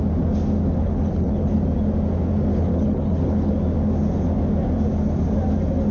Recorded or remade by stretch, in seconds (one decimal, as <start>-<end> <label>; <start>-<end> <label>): 0.0-0.8 recorded; 0.8-1.6 remade; 1.6-2.5 recorded; 2.5-3.5 remade; 3.5-5.9 recorded